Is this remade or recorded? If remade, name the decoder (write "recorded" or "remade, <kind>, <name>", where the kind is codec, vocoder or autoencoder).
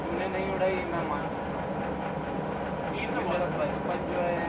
recorded